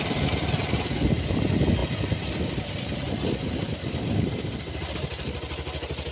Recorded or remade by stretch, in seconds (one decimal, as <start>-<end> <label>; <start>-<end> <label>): 0.0-6.1 recorded